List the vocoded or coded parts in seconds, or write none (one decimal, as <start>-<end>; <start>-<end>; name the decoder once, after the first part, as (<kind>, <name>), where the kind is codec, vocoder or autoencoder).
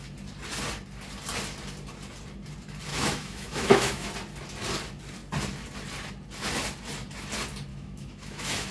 2.9-4.1 (autoencoder, DAC-VAE); 7.7-8.7